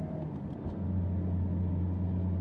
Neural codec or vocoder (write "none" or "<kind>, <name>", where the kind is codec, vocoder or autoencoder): none